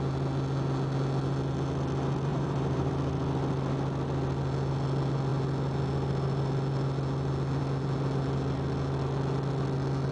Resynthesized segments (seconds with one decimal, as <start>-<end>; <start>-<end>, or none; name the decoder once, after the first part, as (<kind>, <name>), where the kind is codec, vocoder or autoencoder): 2.3-2.9 (vocoder, BigVGAN v2)